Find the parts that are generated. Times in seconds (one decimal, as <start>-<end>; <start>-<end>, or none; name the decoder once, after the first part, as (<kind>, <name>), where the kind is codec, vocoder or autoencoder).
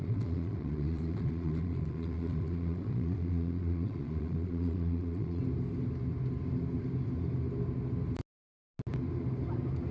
0.0-5.4 (vocoder, Vocos)